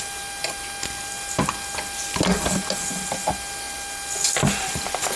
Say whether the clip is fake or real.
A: real